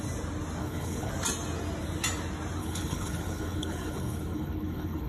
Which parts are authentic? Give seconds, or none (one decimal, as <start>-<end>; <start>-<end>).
0.0-0.6; 1.1-2.6